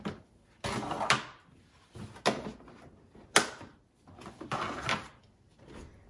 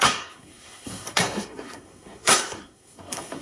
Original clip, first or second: first